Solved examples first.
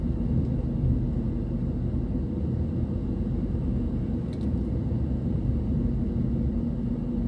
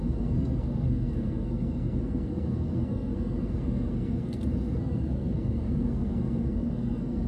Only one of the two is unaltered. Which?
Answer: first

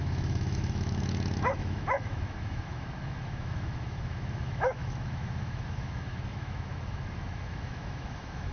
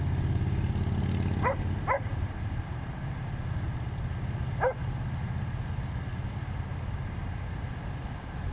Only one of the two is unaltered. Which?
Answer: second